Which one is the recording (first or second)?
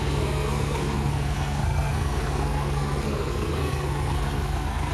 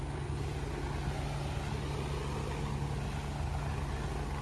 second